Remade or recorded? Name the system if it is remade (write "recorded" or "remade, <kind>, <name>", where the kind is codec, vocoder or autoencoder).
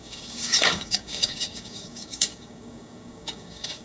remade, codec, DAC